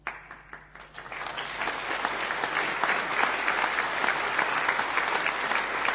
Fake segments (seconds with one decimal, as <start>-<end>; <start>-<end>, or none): none